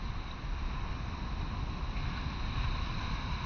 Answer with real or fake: real